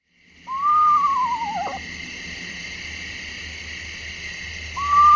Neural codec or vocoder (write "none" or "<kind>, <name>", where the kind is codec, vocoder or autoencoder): none